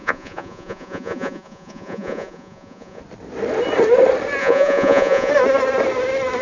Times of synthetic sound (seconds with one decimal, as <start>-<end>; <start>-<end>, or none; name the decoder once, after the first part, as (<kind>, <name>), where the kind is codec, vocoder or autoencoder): 0.0-3.0 (vocoder, Vocos); 4.4-5.3